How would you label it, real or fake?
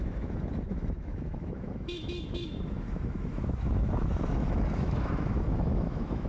fake